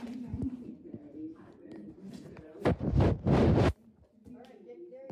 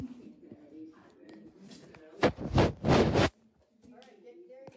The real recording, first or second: second